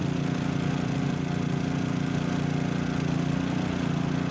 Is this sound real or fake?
real